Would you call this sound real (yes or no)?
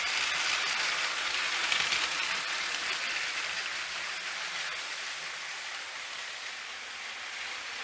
yes